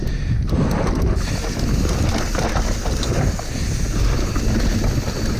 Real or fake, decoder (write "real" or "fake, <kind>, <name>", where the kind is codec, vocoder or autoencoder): real